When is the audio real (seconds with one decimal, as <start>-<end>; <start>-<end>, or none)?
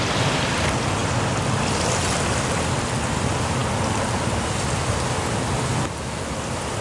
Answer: 0.0-6.8